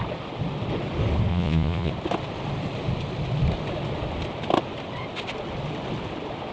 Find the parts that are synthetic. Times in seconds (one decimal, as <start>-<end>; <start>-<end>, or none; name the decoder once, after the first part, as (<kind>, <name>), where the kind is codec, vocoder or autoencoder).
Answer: 1.3-1.9 (vocoder, Vocos)